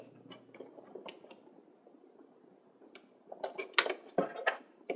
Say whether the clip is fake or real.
real